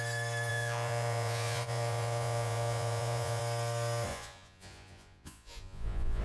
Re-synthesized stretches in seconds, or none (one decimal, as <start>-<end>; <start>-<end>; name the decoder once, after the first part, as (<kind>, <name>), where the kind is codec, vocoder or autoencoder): 0.5-3.4 (vocoder, Vocos); 4.1-6.2